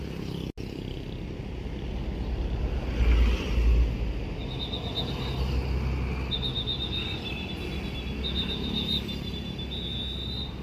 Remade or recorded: recorded